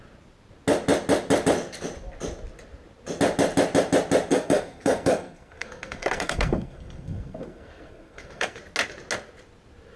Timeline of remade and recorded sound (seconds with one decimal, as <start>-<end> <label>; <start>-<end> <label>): 0.0-4.3 recorded; 4.3-8.6 remade; 8.6-10.0 recorded